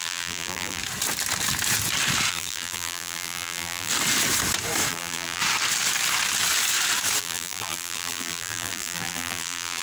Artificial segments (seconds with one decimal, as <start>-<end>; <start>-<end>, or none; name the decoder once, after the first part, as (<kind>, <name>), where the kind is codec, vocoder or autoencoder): 0.0-0.8 (vocoder, BigVGAN v2); 2.3-3.9; 4.9-5.4; 7.2-9.8